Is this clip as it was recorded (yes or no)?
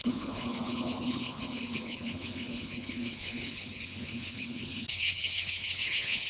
no